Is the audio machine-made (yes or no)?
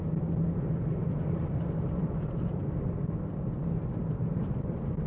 yes